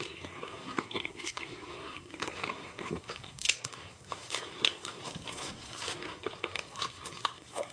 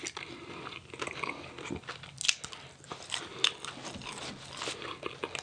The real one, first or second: second